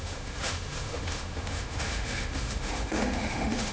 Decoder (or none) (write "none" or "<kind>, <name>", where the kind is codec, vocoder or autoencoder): autoencoder, DAC-VAE